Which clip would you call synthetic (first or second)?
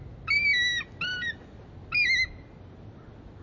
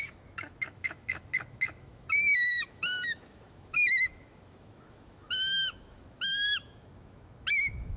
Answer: second